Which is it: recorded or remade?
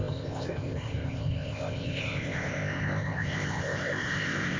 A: remade